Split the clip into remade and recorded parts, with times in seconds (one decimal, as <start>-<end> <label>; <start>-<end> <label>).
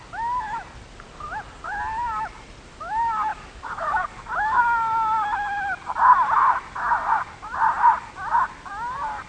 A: 0.0-3.3 recorded; 3.3-4.6 remade; 4.6-9.3 recorded